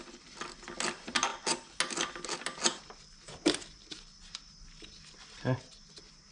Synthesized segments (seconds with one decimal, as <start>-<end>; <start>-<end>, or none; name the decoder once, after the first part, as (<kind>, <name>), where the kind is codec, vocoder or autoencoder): none